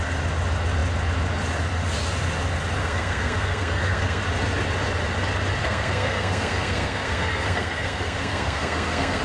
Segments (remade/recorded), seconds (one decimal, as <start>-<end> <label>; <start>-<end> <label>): 0.0-2.8 recorded; 2.8-4.2 remade; 4.2-5.6 recorded; 5.6-9.2 remade